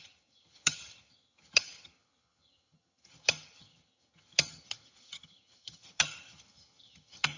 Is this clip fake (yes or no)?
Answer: yes